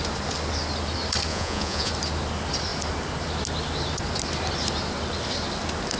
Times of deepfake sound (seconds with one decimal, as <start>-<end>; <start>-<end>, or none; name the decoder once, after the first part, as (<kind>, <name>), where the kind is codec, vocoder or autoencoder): 1.3-1.9 (vocoder, Vocos)